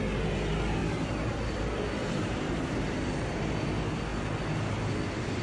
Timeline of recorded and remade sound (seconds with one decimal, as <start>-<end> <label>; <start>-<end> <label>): 0.0-2.0 recorded; 2.0-3.4 remade; 3.4-5.4 recorded